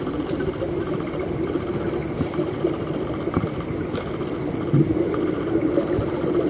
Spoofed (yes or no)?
no